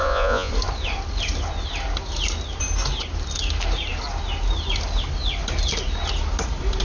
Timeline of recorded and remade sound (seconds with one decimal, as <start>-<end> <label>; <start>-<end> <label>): 0.0-0.5 remade; 0.5-6.8 recorded

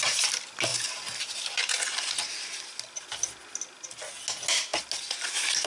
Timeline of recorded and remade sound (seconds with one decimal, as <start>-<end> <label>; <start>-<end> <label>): 0.0-5.7 recorded

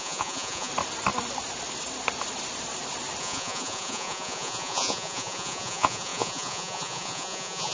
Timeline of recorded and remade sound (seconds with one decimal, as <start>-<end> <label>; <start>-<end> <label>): 0.0-0.7 remade; 0.7-3.2 recorded; 3.2-7.7 remade

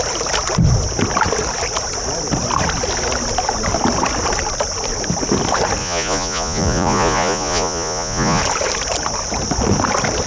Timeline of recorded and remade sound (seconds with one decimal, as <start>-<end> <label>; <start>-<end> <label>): 0.0-5.8 recorded; 5.8-8.4 remade; 8.4-10.3 recorded

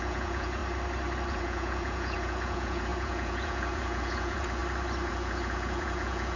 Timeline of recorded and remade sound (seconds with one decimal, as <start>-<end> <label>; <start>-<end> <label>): 0.0-0.6 remade; 0.6-1.3 recorded; 1.3-4.6 remade; 4.6-5.1 recorded; 5.1-6.4 remade

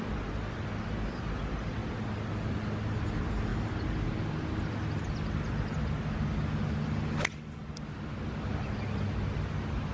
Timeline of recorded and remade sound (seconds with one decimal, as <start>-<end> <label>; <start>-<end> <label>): 0.0-9.9 recorded